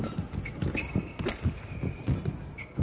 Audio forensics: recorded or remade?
recorded